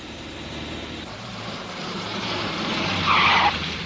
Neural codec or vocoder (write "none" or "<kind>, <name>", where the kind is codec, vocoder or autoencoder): vocoder, BigVGAN v2